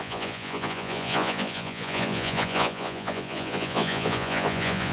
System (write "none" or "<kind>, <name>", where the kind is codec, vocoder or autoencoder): vocoder, Vocos